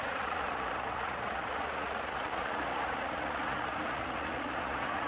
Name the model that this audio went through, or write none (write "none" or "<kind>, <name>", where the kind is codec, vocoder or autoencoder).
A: vocoder, Vocos